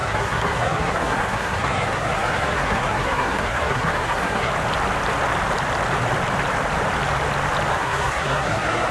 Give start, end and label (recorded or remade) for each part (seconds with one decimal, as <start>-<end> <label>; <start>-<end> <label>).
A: 0.0-4.5 remade; 4.5-7.7 recorded; 7.7-8.9 remade